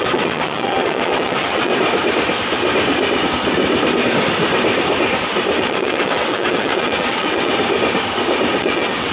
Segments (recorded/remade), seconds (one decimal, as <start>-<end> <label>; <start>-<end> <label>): 0.0-1.7 remade; 1.7-5.6 recorded; 5.6-7.5 remade; 7.5-8.6 recorded; 8.6-9.1 remade